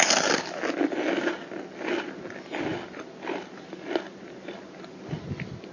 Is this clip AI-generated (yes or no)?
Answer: no